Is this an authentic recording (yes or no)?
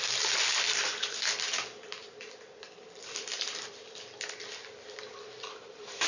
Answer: yes